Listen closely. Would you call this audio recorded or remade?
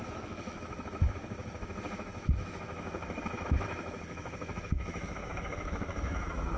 remade